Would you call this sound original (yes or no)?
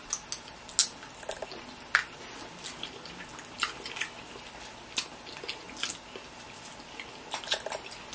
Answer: yes